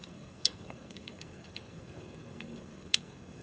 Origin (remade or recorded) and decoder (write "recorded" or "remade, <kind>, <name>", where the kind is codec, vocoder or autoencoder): remade, codec, SNAC